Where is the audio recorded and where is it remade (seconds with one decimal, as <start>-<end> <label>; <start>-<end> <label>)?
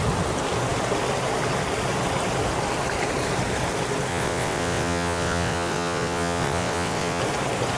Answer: 0.0-4.1 recorded; 4.1-7.2 remade; 7.2-7.8 recorded